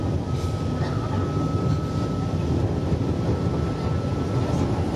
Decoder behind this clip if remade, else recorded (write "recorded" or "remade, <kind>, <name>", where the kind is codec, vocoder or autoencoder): recorded